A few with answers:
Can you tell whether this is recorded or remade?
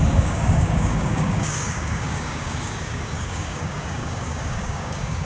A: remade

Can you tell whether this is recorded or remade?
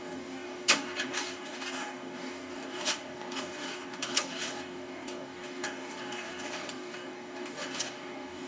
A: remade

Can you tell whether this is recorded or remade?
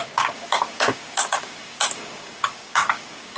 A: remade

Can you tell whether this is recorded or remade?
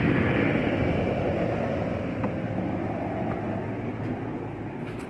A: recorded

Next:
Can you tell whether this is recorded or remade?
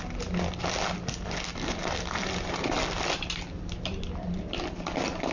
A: recorded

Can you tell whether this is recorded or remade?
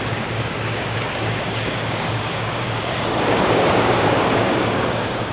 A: remade